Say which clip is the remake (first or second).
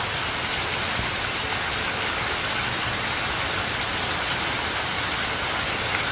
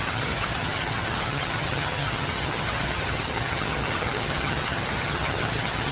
second